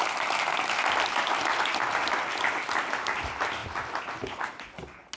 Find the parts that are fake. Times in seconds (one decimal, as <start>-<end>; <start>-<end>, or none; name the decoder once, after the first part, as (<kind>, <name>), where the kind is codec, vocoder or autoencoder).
none